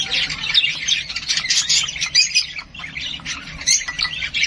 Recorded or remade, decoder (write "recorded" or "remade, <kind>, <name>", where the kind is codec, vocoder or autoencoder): remade, vocoder, BigVGAN v2